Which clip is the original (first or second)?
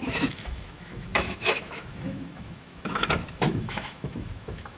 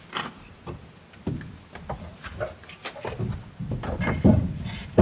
second